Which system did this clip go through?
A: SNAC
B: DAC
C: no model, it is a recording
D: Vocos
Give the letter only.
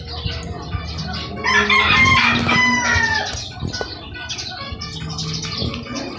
C